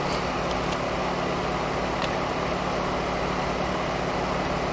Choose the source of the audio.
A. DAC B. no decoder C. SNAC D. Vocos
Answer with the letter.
B